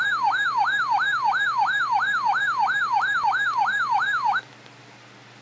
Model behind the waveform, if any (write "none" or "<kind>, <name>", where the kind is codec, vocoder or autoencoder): none